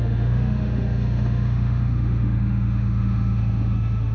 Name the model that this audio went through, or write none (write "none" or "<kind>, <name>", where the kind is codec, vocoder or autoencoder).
autoencoder, DAC-VAE